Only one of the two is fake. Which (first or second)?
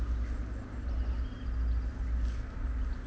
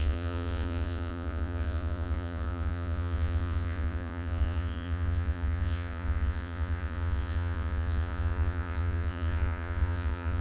second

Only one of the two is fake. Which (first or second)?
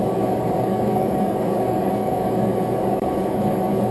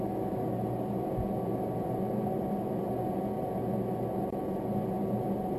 first